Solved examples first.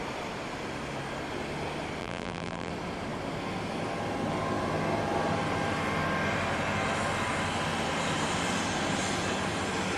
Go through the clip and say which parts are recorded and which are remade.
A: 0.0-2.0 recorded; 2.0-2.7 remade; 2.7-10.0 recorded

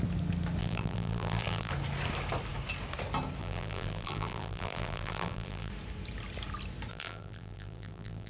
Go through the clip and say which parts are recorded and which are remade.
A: 0.0-0.6 recorded; 0.6-1.7 remade; 1.7-3.4 recorded; 3.4-5.7 remade; 5.7-6.9 recorded; 6.9-8.3 remade

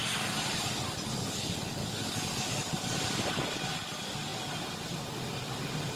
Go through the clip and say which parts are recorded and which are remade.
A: 0.0-6.0 recorded

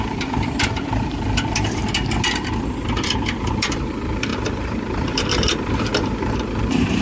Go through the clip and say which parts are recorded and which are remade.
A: 0.0-1.8 remade; 1.8-3.5 recorded; 3.5-7.0 remade